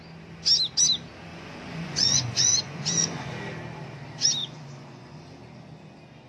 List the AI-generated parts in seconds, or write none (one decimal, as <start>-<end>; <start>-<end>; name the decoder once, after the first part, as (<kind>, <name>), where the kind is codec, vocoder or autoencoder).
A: 1.3-3.3 (vocoder, Vocos); 4.4-5.3